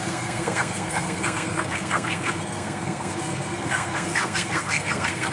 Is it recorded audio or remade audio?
remade